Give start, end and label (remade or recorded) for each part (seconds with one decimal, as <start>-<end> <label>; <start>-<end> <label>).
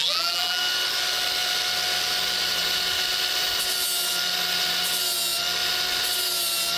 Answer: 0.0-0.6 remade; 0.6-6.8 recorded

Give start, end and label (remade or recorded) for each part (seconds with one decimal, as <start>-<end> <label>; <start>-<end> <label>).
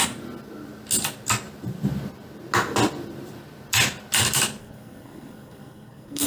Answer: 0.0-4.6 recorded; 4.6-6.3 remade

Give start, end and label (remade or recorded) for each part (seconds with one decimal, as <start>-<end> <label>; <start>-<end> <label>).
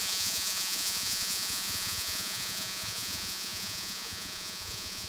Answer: 0.0-5.1 remade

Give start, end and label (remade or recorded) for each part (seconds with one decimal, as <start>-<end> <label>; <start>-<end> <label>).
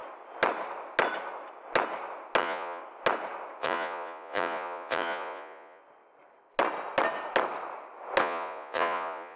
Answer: 0.0-2.4 recorded; 2.4-2.8 remade; 2.8-3.6 recorded; 3.6-5.8 remade; 5.8-8.2 recorded; 8.2-9.4 remade